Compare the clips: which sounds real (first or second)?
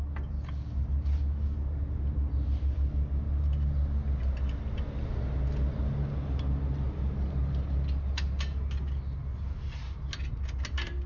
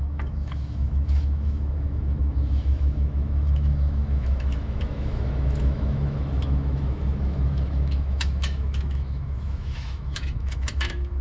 first